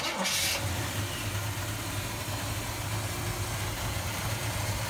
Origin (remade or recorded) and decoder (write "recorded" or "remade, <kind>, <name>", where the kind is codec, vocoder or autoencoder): recorded